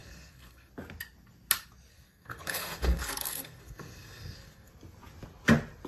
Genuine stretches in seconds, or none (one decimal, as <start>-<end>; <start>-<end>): 0.7-1.9; 4.7-5.9